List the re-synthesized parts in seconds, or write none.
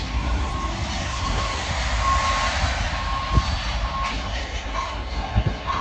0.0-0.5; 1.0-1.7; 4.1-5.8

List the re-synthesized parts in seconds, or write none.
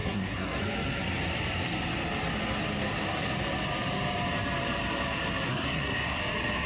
0.0-0.6; 5.5-6.2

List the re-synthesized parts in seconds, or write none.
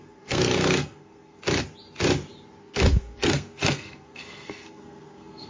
0.0-1.4; 2.6-5.5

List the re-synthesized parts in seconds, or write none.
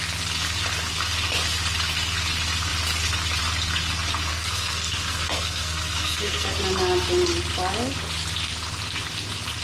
4.3-6.6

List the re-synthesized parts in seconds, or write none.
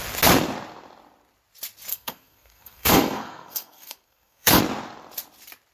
1.9-4.6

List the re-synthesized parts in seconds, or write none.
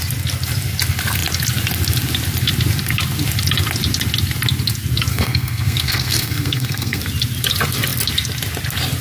5.1-7.0